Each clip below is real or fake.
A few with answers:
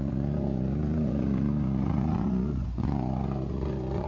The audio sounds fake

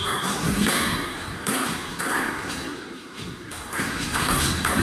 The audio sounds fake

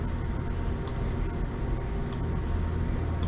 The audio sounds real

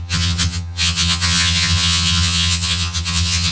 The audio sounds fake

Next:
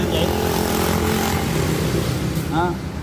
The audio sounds real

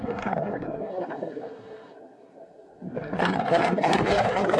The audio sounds fake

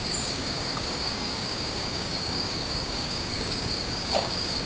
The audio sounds fake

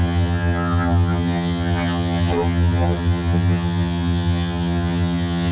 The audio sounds fake